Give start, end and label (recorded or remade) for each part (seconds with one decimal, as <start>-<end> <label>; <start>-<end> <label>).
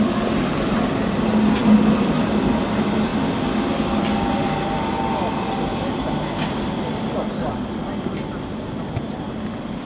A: 0.0-9.8 recorded